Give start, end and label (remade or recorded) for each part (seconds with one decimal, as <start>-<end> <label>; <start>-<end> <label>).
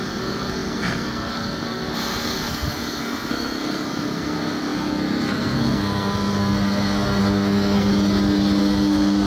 0.0-7.9 remade; 7.9-8.6 recorded; 8.6-9.3 remade